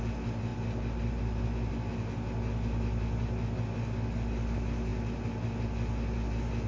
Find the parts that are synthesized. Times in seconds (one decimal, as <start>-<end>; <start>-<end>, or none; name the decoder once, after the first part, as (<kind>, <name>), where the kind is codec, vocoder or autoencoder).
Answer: none